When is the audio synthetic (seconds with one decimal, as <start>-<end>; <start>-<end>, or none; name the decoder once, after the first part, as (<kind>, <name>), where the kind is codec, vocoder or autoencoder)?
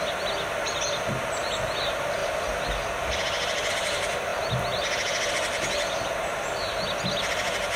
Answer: none